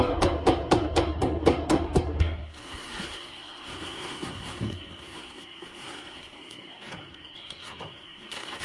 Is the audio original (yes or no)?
no